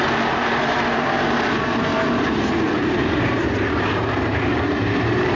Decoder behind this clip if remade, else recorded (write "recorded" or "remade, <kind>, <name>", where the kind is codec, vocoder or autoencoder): remade, vocoder, BigVGAN v2